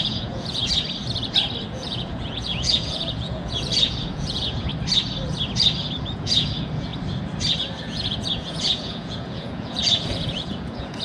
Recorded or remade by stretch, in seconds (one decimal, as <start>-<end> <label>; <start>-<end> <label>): 0.0-0.6 remade; 0.6-1.7 recorded; 1.7-4.7 remade; 4.7-6.0 recorded; 6.0-6.9 remade; 6.9-7.8 recorded; 7.8-11.0 remade